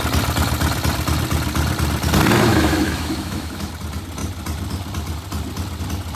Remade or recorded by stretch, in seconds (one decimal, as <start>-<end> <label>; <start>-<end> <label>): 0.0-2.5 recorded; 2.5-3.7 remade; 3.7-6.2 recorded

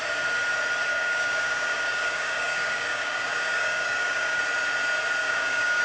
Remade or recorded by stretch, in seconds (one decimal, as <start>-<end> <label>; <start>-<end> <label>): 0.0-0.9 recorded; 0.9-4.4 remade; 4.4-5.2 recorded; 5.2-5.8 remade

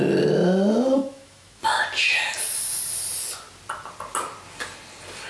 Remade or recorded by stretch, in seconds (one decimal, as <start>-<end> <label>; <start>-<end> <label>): 0.0-1.0 recorded; 1.0-1.6 remade; 1.6-5.3 recorded

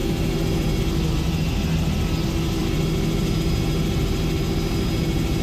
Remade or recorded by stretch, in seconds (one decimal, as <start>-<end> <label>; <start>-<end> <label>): 0.0-5.4 recorded